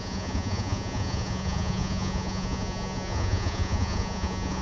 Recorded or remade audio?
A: remade